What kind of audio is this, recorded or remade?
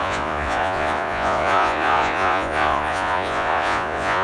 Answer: remade